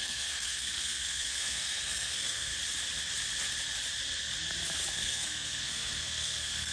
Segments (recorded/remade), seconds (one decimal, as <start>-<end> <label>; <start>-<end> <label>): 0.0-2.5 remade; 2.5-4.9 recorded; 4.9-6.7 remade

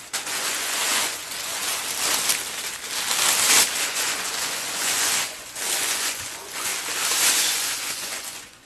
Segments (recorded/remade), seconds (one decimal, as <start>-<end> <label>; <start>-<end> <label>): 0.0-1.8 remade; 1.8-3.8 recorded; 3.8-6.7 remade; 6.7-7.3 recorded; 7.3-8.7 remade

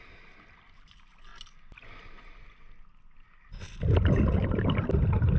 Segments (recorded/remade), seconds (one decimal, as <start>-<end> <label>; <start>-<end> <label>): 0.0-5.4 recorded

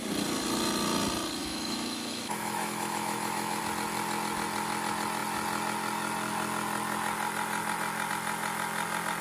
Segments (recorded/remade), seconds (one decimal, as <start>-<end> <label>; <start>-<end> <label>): 0.0-1.4 recorded; 1.4-3.6 remade; 3.6-9.2 recorded

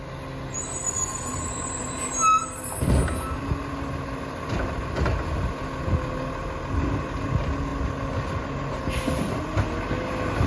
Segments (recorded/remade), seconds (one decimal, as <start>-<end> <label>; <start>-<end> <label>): 0.0-10.5 recorded

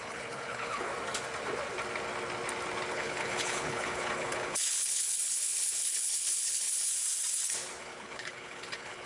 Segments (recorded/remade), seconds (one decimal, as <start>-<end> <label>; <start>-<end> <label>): 0.0-0.9 remade; 0.9-2.9 recorded; 2.9-6.9 remade; 6.9-7.8 recorded; 7.8-9.1 remade

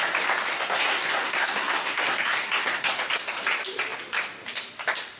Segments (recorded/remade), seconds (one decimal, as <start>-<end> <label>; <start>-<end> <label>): 0.0-0.5 recorded; 0.5-3.0 remade; 3.0-5.2 recorded